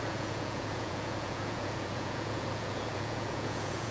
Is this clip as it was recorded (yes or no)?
no